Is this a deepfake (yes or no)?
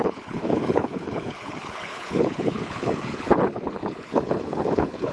yes